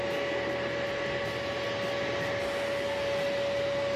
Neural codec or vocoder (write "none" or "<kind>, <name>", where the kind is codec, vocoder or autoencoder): none